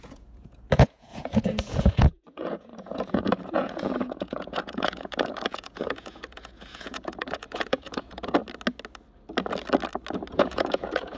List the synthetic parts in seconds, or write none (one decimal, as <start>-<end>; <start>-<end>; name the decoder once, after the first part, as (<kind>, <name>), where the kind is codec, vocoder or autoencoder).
0.0-8.4 (vocoder, Vocos); 10.3-11.2